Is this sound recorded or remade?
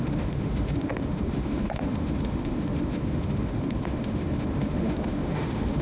remade